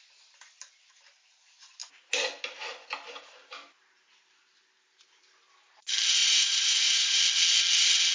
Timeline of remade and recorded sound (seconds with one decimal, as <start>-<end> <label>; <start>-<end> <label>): 0.0-6.2 recorded; 6.2-7.2 remade; 7.2-8.1 recorded